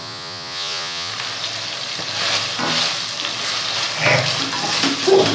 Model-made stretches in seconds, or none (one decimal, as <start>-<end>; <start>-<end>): 0.0-1.1